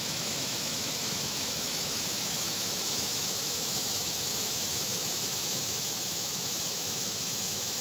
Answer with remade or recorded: remade